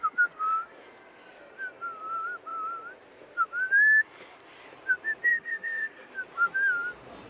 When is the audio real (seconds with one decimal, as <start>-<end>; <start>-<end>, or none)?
0.0-5.3; 6.1-7.3